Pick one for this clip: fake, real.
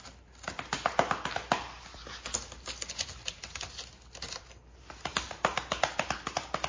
real